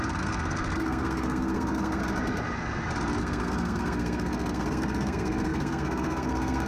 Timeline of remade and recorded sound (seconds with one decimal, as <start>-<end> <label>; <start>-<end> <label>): 0.0-2.0 remade; 2.0-3.2 recorded; 3.2-6.7 remade